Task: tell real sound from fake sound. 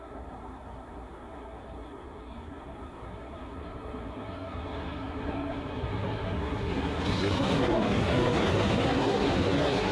fake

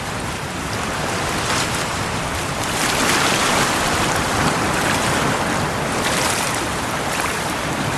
fake